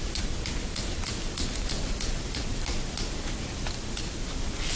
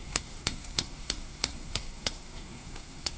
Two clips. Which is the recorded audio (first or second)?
first